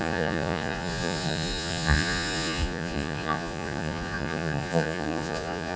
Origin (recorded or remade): remade